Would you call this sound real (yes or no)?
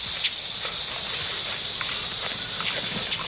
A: yes